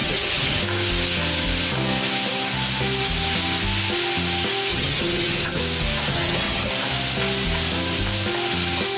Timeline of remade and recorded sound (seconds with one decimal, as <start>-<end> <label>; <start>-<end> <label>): 0.0-0.6 remade; 0.6-4.7 recorded; 4.7-5.6 remade; 5.6-6.1 recorded; 6.1-6.7 remade; 6.7-9.0 recorded